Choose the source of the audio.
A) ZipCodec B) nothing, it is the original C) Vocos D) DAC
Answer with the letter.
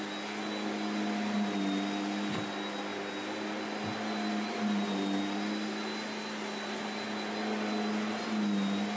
B